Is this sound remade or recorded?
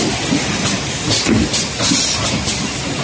recorded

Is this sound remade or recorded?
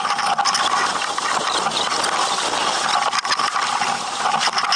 recorded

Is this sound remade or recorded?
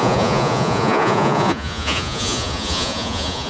remade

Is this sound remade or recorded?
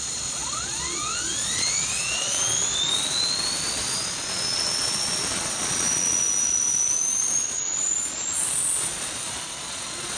remade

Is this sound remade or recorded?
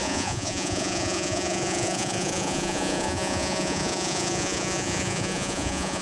remade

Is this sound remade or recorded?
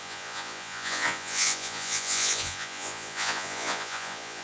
remade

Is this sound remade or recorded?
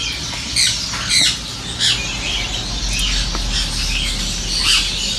recorded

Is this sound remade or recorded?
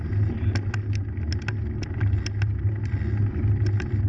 recorded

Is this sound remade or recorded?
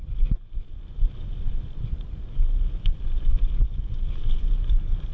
recorded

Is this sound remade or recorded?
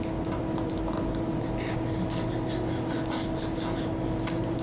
recorded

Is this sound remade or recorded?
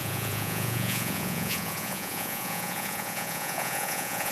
remade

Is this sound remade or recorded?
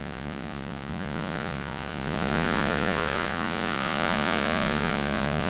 remade